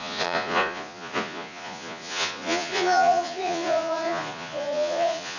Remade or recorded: remade